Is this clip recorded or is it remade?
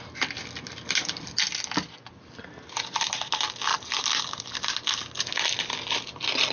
recorded